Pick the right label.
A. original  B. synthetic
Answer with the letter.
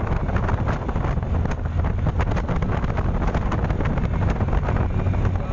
A